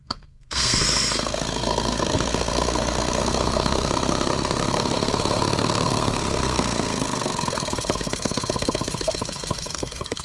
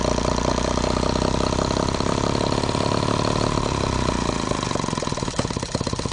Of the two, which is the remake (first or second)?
first